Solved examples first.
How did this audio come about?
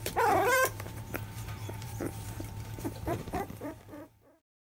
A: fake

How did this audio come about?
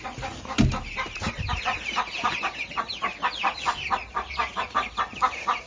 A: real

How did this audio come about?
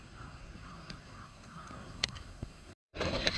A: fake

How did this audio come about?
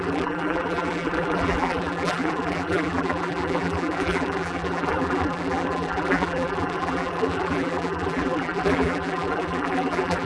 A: fake